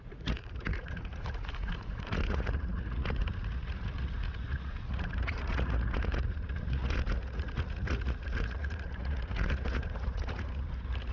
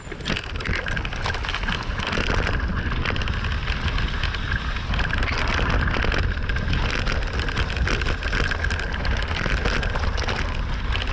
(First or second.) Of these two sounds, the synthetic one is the first